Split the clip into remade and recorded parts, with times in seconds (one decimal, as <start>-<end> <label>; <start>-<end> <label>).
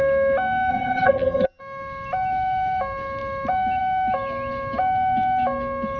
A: 0.0-0.7 recorded; 0.7-1.6 remade; 1.6-6.0 recorded